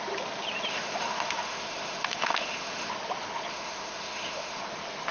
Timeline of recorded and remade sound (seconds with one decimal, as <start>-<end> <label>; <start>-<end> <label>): 0.0-0.7 recorded; 0.7-2.9 remade; 2.9-3.5 recorded; 3.5-4.6 remade; 4.6-5.1 recorded